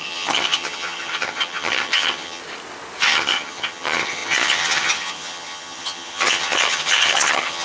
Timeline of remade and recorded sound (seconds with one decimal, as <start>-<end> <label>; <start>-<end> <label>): 0.0-2.4 remade; 2.4-3.0 recorded; 3.0-7.6 remade